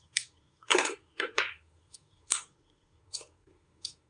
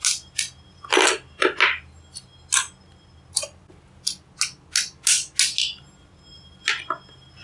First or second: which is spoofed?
first